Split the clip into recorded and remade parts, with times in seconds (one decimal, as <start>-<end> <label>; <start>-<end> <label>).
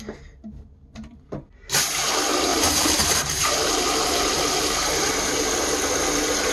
0.0-2.5 recorded; 2.5-5.1 remade; 5.1-6.5 recorded